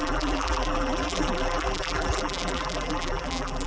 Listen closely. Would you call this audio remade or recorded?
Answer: remade